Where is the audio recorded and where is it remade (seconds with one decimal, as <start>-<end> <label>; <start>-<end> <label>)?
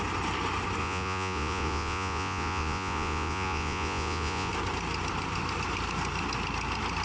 0.0-0.8 recorded; 0.8-4.5 remade; 4.5-7.0 recorded